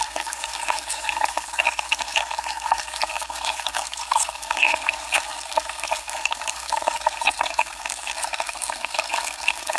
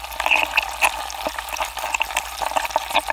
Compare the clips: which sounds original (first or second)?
second